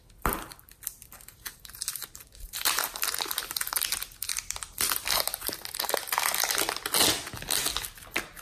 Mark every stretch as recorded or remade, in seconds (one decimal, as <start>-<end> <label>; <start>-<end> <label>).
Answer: 0.0-1.0 recorded; 1.0-3.4 remade; 3.4-8.4 recorded